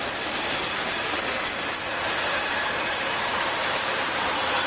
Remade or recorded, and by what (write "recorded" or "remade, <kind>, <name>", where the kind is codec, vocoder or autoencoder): remade, vocoder, BigVGAN v2